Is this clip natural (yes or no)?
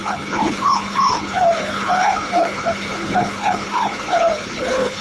no